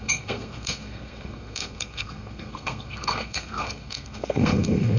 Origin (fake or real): fake